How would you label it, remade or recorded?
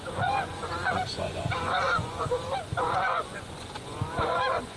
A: remade